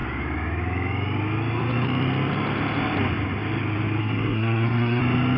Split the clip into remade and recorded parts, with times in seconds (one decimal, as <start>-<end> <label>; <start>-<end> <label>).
0.0-4.0 recorded; 4.0-5.0 remade; 5.0-5.4 recorded